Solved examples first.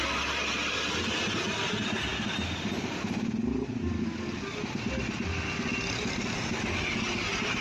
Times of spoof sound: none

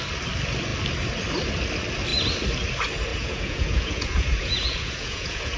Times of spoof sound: 3.1-5.6 (vocoder, Vocos)

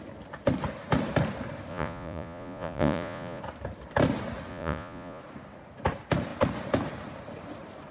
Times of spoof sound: 1.7-3.4 (vocoder, Vocos); 4.5-5.2

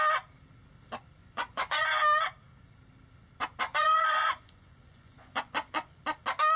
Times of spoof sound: 1.2-1.9 (vocoder, Vocos); 3.7-6.0

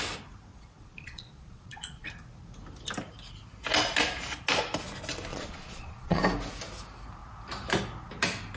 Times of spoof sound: 0.5-2.1 (vocoder, Vocos); 5.3-6.2

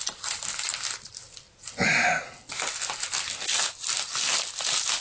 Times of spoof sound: none